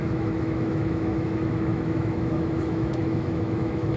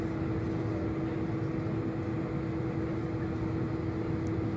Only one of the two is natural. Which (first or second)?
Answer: second